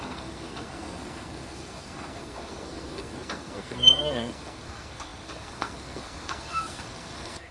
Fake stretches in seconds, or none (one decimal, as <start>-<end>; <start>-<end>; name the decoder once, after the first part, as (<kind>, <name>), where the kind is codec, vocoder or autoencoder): 0.0-7.5 (codec, SNAC)